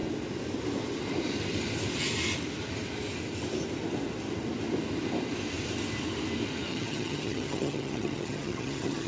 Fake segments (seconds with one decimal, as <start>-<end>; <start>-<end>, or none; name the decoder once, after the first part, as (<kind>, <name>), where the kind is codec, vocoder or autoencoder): 6.7-9.1 (vocoder, HiFi-GAN)